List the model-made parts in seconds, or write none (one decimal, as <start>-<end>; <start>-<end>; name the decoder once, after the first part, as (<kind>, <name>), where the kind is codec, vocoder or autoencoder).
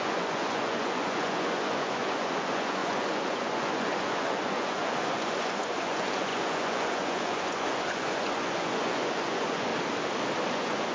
0.0-9.7 (vocoder, Vocos); 10.5-10.9